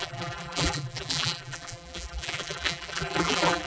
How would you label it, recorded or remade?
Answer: remade